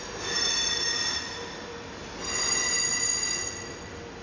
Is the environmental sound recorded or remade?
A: recorded